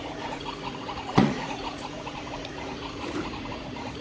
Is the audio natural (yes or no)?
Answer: no